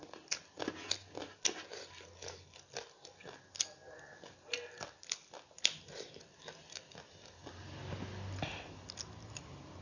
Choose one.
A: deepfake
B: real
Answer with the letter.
B